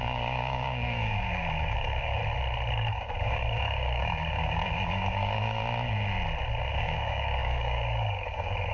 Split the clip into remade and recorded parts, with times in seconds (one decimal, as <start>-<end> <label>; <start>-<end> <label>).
0.0-2.2 remade; 2.2-2.7 recorded; 2.7-5.6 remade; 5.6-6.7 recorded; 6.7-8.7 remade